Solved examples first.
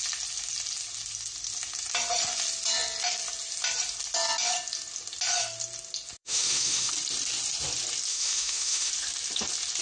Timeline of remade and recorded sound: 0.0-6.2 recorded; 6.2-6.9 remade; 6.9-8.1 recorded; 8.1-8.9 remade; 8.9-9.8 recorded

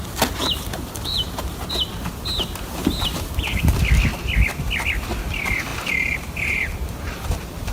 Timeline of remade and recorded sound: 0.0-0.4 recorded; 0.4-1.6 remade; 1.6-2.8 recorded; 2.8-3.6 remade; 3.6-7.7 recorded

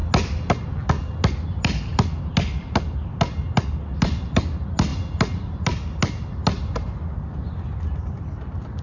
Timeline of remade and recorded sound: 0.0-8.8 recorded